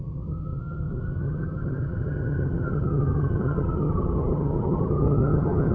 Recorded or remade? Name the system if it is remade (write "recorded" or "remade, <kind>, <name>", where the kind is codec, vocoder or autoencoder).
remade, vocoder, HiFi-GAN